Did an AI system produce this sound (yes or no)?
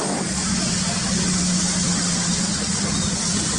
no